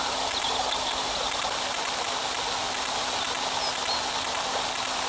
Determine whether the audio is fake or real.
real